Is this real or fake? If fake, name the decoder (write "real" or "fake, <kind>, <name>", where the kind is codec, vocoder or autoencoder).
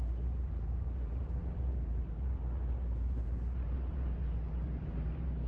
fake, vocoder, BigVGAN v2